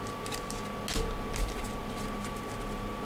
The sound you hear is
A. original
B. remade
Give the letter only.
A